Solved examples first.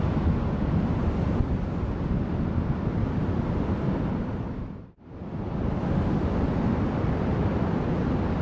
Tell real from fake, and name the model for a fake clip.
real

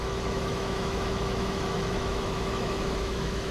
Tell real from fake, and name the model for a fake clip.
fake, autoencoder, DAC-VAE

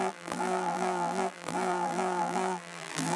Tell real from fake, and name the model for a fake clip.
fake, vocoder, BigVGAN v2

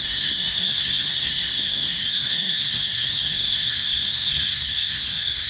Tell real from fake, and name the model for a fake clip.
fake, codec, SNAC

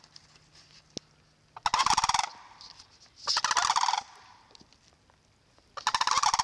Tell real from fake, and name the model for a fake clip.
real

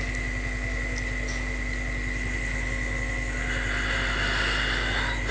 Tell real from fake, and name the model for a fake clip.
real